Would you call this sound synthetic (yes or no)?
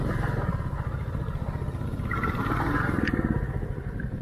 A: no